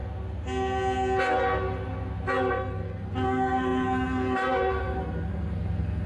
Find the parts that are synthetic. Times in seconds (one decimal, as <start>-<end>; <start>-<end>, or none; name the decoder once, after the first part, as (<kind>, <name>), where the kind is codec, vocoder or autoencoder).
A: 2.5-6.1 (codec, SNAC)